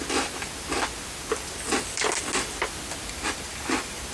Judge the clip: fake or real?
real